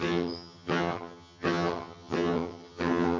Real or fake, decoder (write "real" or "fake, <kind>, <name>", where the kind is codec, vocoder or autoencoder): fake, vocoder, HiFi-GAN